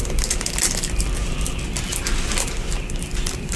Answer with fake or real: real